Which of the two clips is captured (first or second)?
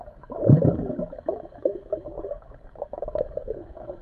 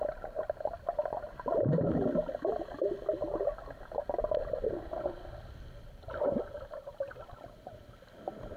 second